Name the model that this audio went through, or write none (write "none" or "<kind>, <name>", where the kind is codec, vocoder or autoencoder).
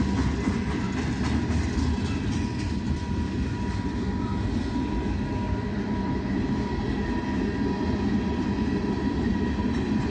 none